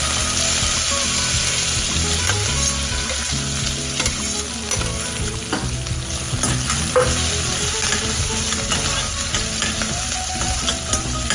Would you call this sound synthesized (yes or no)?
no